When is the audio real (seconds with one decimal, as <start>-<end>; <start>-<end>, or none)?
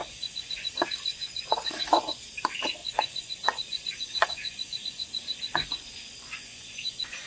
0.7-1.1; 2.2-2.8